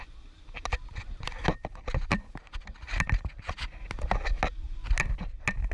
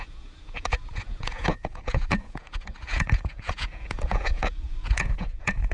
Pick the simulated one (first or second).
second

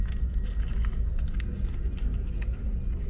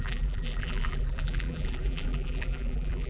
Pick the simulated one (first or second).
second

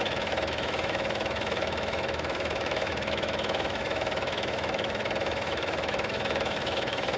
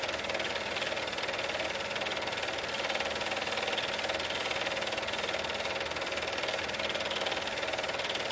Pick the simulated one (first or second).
first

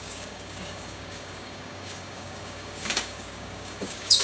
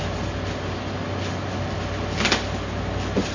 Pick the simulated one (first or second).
first